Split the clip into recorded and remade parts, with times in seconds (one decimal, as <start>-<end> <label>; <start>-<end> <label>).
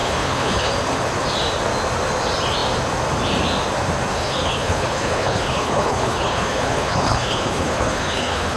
0.0-0.7 remade; 0.7-4.1 recorded; 4.1-8.6 remade